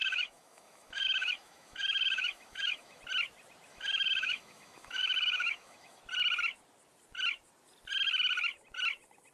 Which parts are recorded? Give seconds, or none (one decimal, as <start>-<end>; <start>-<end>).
3.0-3.7; 6.0-9.3